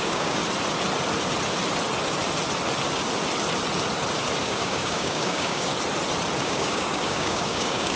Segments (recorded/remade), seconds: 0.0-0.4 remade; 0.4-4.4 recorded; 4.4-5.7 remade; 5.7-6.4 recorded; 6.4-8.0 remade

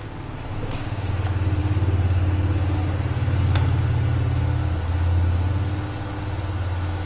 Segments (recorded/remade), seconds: 0.0-0.5 recorded; 0.5-1.1 remade; 1.1-7.1 recorded

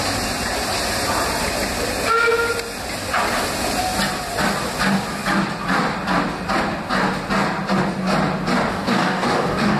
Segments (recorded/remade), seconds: 0.0-8.7 recorded; 8.7-9.8 remade

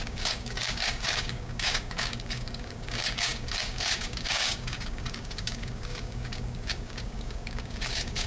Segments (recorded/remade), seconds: 0.0-8.3 remade

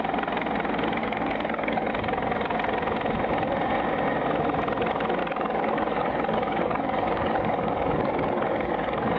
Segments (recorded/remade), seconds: 0.0-1.0 recorded; 1.0-1.9 remade; 1.9-5.2 recorded; 5.2-9.2 remade

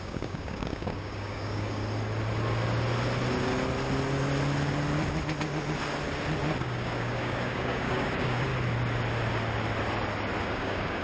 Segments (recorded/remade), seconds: 0.0-1.8 remade; 1.8-6.6 recorded; 6.6-8.5 remade; 8.5-10.4 recorded; 10.4-11.0 remade

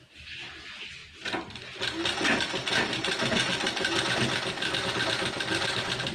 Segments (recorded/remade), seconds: 0.0-6.1 recorded